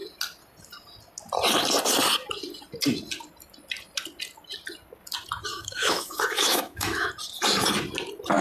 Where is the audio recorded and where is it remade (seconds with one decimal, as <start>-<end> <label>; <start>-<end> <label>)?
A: 0.0-5.5 recorded; 5.5-7.1 remade; 7.1-8.4 recorded